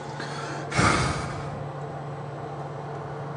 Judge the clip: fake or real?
real